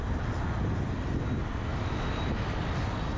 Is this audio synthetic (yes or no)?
no